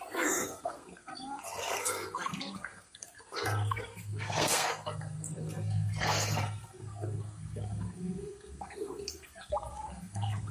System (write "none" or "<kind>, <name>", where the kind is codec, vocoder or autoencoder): codec, SNAC